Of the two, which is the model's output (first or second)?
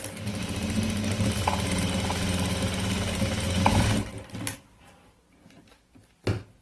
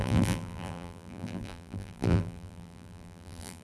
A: second